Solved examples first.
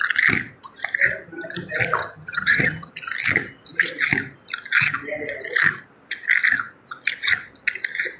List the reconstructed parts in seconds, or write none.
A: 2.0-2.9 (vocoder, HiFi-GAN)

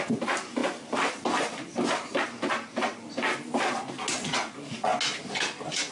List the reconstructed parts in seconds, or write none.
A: none

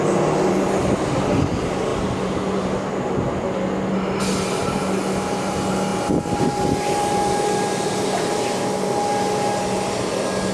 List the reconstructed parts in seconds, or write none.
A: none

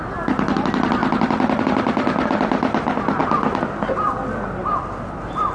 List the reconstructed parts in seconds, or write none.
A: none

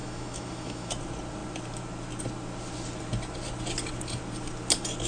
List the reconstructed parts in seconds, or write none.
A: 0.0-0.9 (autoencoder, DAC-VAE)

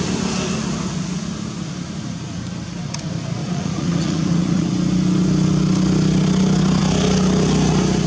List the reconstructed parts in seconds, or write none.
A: 3.4-4.7 (vocoder, Vocos)

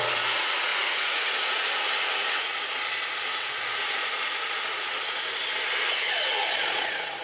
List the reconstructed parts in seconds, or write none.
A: 0.0-5.4 (vocoder, Vocos); 6.7-7.2

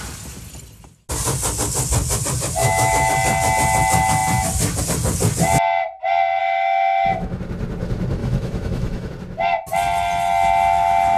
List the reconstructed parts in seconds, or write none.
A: 2.6-3.1 (autoencoder, DAC-VAE); 6.4-7.4; 8.2-9.1